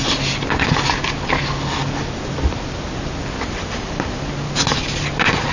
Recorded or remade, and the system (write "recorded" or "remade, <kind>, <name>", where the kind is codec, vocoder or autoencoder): recorded